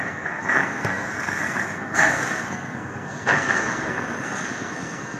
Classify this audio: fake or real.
fake